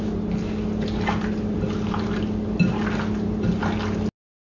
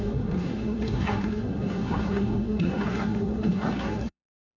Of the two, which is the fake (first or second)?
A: second